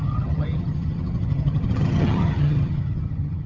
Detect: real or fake fake